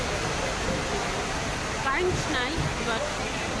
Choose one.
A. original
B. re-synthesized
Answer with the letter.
A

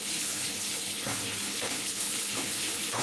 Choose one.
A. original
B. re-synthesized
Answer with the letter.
B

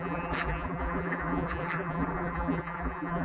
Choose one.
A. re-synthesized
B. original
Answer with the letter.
A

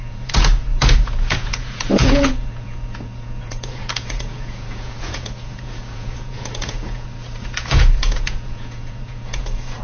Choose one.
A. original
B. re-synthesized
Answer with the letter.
B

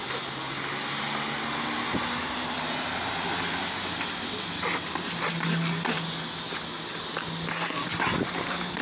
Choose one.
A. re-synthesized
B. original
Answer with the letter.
B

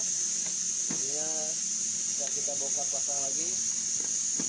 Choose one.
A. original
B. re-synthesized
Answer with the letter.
A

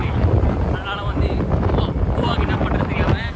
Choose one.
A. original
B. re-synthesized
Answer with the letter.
B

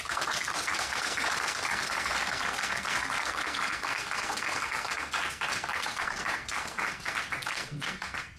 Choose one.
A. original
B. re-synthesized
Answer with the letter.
B